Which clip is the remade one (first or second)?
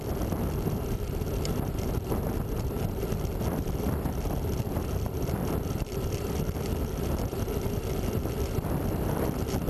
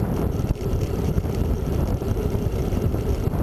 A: second